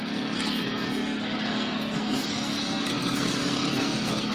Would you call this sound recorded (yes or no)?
no